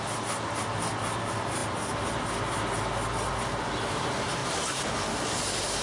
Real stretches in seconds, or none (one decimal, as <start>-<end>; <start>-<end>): 0.0-5.8